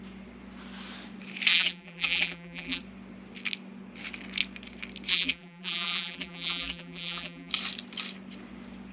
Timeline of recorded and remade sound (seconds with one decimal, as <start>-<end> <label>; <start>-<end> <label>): 0.0-1.5 recorded; 1.5-2.8 remade; 2.8-5.1 recorded; 5.1-7.5 remade; 7.5-8.9 recorded